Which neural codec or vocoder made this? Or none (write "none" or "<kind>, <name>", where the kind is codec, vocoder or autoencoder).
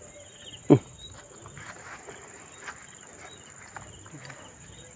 none